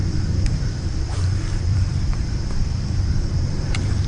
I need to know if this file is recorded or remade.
remade